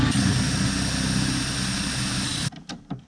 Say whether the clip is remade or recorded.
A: recorded